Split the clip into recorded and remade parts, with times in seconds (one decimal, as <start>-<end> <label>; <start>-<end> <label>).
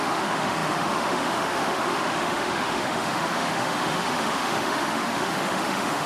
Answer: 0.0-6.1 remade